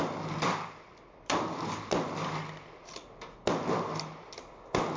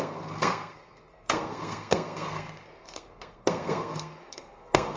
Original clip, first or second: first